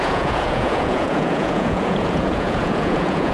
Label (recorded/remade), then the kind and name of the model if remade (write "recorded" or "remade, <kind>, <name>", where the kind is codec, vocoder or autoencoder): remade, vocoder, Vocos